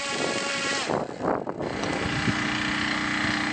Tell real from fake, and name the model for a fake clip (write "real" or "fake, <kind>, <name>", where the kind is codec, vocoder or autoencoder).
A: fake, vocoder, BigVGAN v2